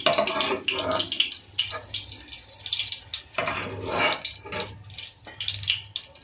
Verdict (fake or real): real